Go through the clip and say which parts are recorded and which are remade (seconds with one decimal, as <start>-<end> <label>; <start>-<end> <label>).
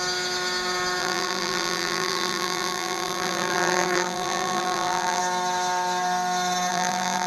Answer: 0.0-1.0 recorded; 1.0-5.2 remade; 5.2-6.7 recorded; 6.7-7.3 remade